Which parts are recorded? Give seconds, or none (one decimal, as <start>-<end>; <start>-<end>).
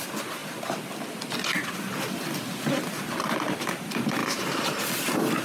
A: 0.0-4.2; 4.8-5.4